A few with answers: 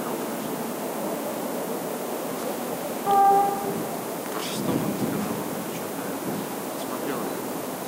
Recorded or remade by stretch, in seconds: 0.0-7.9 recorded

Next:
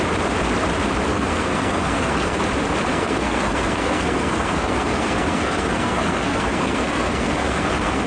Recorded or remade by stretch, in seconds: 0.0-1.1 recorded; 1.1-2.4 remade; 2.4-2.9 recorded; 2.9-8.1 remade

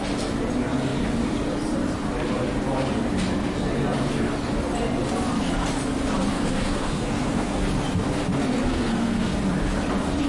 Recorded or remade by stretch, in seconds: 0.0-6.3 recorded; 6.3-7.6 remade; 7.6-8.6 recorded; 8.6-9.4 remade; 9.4-10.3 recorded

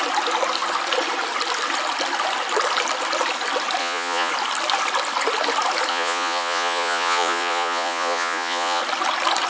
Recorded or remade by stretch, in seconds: 0.0-3.8 recorded; 3.8-4.3 remade; 4.3-5.9 recorded; 5.9-8.8 remade; 8.8-9.5 recorded

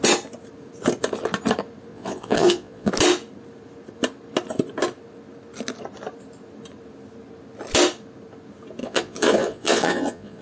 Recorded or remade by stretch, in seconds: 0.0-1.9 recorded; 1.9-2.9 remade; 2.9-8.8 recorded; 8.8-10.4 remade

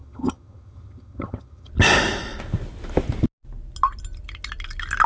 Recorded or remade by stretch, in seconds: 0.0-1.7 remade; 1.7-5.1 recorded